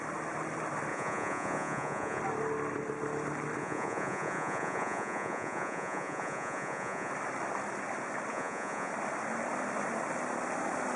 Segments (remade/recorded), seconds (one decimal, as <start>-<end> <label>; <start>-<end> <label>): 0.0-0.9 recorded; 0.9-2.2 remade; 2.2-3.6 recorded; 3.6-7.1 remade; 7.1-8.3 recorded; 8.3-8.9 remade; 8.9-11.0 recorded